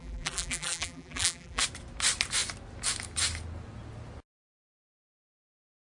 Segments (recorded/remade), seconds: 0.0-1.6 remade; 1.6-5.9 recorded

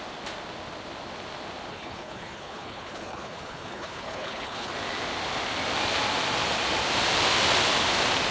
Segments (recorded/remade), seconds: 0.0-1.7 recorded; 1.7-4.7 remade; 4.7-8.3 recorded

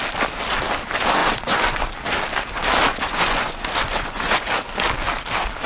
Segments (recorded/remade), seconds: 0.0-1.2 recorded; 1.2-1.8 remade; 1.8-2.9 recorded; 2.9-4.5 remade; 4.5-5.7 recorded

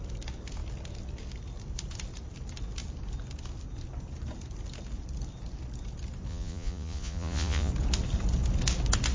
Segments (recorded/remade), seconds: 0.0-6.3 recorded; 6.3-7.7 remade; 7.7-9.1 recorded

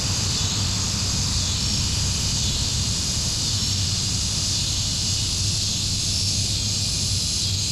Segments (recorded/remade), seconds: 0.0-7.7 recorded

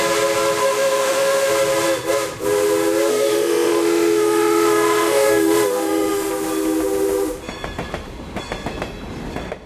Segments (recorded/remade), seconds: 0.0-0.6 recorded; 0.6-1.5 remade; 1.5-3.1 recorded; 3.1-6.3 remade; 6.3-9.7 recorded